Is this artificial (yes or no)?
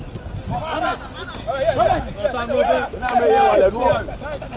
no